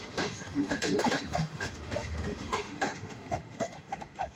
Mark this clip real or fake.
fake